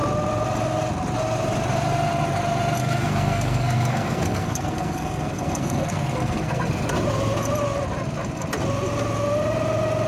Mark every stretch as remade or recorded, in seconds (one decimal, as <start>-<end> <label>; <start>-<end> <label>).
0.0-2.8 recorded; 2.8-6.9 remade; 6.9-10.1 recorded

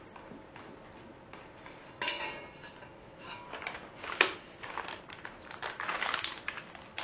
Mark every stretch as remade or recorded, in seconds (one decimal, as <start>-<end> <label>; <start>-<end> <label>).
0.0-2.6 recorded; 2.6-6.6 remade; 6.6-7.0 recorded

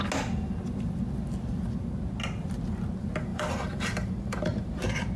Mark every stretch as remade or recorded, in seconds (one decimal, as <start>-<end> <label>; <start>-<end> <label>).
0.0-3.3 recorded; 3.3-4.8 remade; 4.8-5.2 recorded

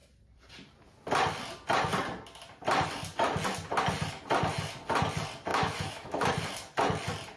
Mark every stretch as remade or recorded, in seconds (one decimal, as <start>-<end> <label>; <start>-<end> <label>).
0.0-5.5 recorded; 5.5-6.3 remade; 6.3-7.4 recorded

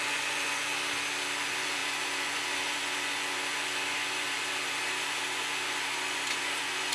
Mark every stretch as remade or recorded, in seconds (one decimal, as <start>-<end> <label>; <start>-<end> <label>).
0.0-0.7 remade; 0.7-1.4 recorded; 1.4-6.9 remade

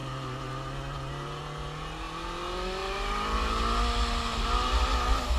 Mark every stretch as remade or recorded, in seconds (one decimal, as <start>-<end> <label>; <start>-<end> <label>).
0.0-5.4 recorded

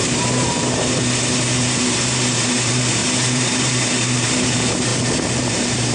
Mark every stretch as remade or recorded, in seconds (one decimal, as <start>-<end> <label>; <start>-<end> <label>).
0.0-4.9 remade; 4.9-5.5 recorded; 5.5-5.9 remade

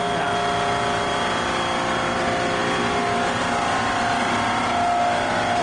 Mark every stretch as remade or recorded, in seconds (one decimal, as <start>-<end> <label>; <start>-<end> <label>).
0.0-5.6 recorded